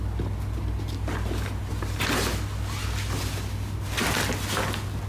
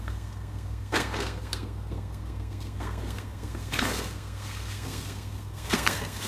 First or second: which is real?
first